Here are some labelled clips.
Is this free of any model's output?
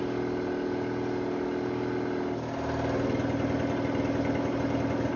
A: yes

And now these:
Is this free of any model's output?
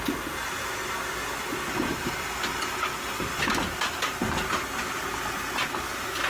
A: yes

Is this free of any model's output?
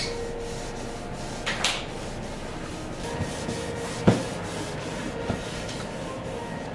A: yes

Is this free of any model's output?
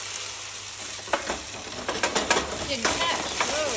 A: yes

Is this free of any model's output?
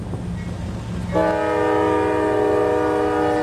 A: yes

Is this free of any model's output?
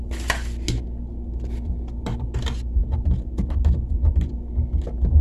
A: yes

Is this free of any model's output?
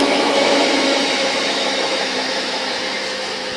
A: no